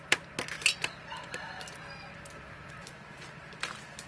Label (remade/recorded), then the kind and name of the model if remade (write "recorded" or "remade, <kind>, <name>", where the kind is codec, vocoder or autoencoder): recorded